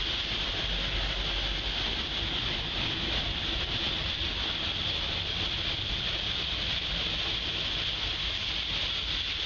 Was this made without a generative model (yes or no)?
yes